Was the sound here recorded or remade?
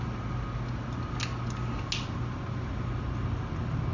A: recorded